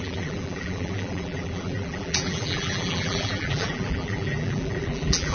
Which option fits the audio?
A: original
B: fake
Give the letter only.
B